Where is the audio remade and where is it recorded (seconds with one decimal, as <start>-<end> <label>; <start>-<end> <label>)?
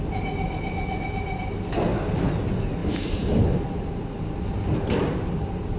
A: 0.0-5.8 recorded